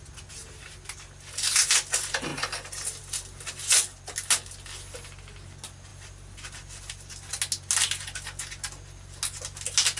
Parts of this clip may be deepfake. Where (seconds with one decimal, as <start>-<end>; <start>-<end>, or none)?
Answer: 5.9-7.3